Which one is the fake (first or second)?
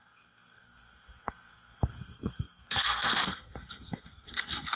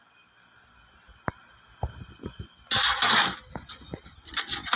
first